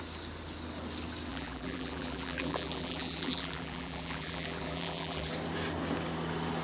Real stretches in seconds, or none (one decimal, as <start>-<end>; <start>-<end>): 0.0-1.3; 5.3-6.6